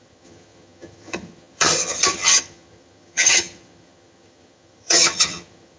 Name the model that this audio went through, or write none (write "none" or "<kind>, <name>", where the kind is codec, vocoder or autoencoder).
vocoder, HiFi-GAN